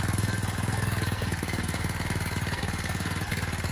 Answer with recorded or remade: remade